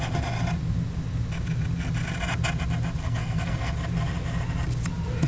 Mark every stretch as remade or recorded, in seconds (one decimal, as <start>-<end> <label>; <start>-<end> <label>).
0.0-3.0 recorded; 3.0-3.7 remade; 3.7-5.3 recorded